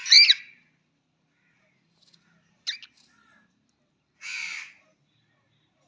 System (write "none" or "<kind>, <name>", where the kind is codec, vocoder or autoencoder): none